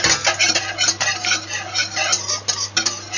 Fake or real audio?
real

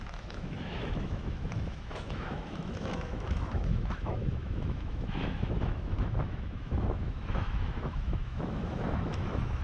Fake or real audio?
fake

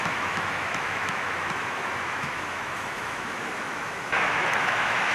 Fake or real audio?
fake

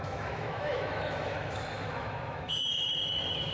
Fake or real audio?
fake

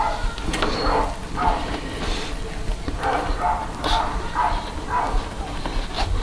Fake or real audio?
real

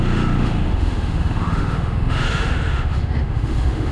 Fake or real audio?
fake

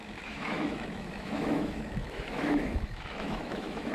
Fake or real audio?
fake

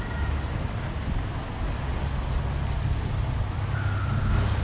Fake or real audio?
real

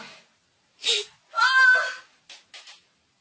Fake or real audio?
real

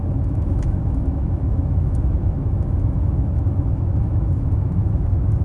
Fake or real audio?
fake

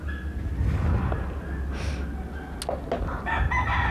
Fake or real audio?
real